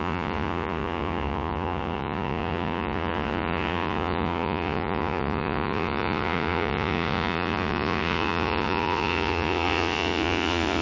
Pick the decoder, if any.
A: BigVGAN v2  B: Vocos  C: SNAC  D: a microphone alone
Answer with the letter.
B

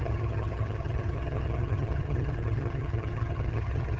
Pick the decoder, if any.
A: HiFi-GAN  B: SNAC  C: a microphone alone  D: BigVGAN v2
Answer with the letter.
A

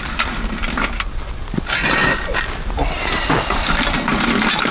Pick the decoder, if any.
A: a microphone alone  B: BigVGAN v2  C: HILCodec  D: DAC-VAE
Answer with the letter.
B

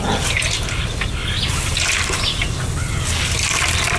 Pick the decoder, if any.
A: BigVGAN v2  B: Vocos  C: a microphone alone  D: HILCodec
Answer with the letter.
C